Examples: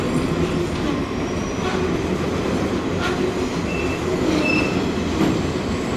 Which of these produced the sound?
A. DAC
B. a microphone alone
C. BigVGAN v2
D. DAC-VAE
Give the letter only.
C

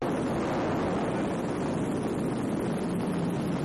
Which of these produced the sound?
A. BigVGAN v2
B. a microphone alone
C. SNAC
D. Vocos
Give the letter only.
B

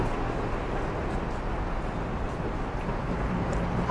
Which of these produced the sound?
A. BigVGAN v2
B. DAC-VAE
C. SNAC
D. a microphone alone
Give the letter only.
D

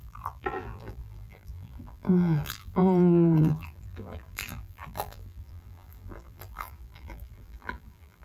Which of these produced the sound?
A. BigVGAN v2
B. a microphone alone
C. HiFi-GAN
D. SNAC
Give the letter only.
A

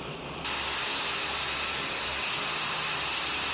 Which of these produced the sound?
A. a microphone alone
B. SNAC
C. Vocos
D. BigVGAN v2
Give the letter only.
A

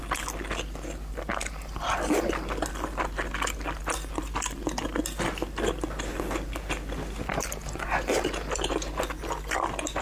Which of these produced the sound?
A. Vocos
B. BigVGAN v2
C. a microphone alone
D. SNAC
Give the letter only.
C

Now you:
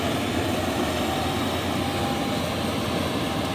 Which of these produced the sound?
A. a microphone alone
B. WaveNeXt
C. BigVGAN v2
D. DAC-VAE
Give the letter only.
A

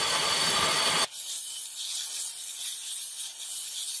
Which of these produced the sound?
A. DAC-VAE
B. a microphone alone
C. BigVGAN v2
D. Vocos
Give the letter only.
B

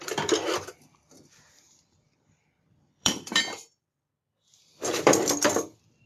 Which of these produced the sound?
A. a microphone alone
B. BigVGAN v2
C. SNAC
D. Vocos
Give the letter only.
B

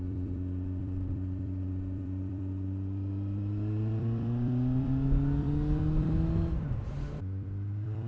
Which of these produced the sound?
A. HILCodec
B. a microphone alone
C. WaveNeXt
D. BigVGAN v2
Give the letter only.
D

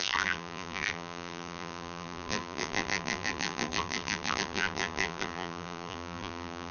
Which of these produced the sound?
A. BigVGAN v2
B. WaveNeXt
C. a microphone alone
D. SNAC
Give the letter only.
A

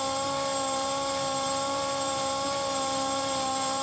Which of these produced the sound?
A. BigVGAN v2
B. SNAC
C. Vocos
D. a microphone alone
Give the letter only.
A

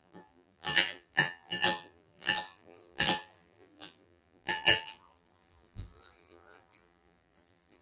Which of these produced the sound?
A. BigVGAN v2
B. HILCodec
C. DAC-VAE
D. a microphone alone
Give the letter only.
A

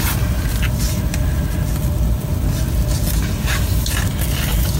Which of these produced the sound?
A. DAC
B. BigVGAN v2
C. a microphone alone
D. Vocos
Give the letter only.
C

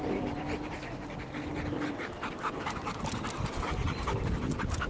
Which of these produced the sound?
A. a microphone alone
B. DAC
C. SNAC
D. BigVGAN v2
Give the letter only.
D